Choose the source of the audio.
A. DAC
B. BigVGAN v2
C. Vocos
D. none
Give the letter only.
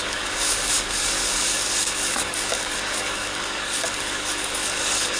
A